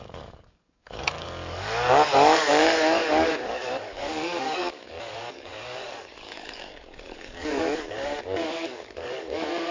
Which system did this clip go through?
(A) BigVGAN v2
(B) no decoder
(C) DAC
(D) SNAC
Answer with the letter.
C